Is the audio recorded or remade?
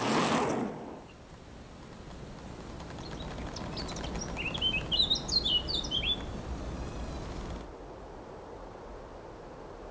recorded